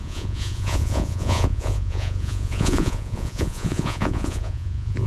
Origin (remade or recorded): remade